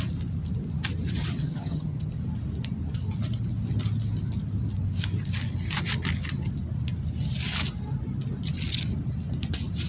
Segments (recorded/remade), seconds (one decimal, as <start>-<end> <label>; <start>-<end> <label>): 0.0-1.4 recorded; 1.4-2.1 remade; 2.1-9.9 recorded

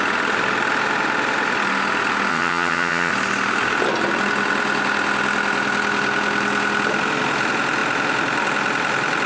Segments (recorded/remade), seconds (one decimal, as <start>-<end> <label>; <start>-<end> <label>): 0.0-2.3 recorded; 2.3-3.1 remade; 3.1-9.3 recorded

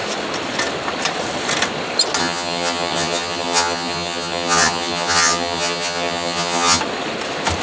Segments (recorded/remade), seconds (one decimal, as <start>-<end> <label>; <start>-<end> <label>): 0.0-2.2 recorded; 2.2-6.8 remade; 6.8-7.6 recorded

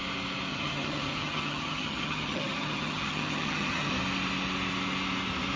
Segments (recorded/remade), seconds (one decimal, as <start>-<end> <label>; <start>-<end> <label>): 0.0-0.5 recorded; 0.5-3.9 remade; 3.9-5.6 recorded

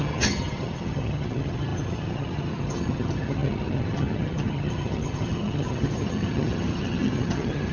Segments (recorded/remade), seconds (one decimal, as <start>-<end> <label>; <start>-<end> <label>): 0.0-7.7 remade

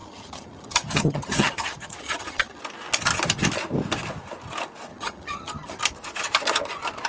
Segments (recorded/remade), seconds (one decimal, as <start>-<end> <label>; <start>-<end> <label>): 0.0-2.6 remade; 2.6-4.9 recorded; 4.9-5.8 remade; 5.8-7.1 recorded

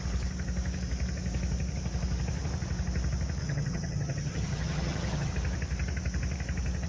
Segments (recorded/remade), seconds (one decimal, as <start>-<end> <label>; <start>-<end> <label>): 0.0-3.4 recorded; 3.4-5.3 remade; 5.3-6.9 recorded